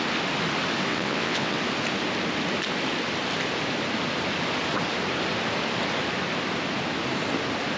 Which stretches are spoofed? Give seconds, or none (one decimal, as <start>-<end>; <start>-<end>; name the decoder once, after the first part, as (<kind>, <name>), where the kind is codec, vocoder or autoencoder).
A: 0.9-1.6 (vocoder, WaveNeXt)